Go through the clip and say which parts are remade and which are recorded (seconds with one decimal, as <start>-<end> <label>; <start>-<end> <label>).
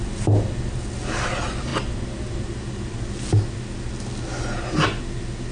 0.0-5.5 recorded